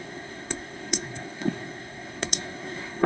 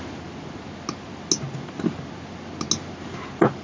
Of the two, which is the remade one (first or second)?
first